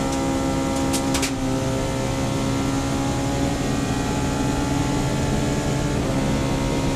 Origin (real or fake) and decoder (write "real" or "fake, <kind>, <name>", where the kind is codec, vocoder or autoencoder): real